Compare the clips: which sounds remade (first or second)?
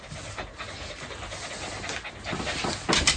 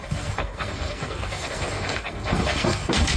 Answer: second